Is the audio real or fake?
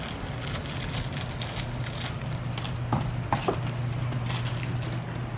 real